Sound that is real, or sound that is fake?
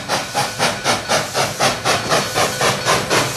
real